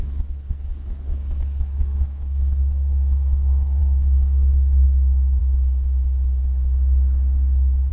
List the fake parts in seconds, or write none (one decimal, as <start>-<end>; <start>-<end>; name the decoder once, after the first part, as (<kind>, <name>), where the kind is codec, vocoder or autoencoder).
0.0-5.4 (codec, SNAC)